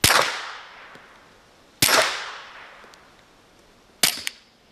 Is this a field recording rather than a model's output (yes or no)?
yes